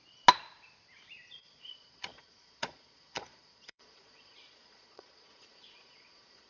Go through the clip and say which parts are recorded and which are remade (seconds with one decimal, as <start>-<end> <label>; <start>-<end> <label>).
0.0-1.3 recorded; 1.3-6.5 remade